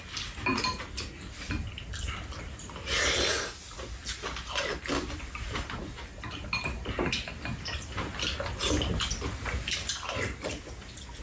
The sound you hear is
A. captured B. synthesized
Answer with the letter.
A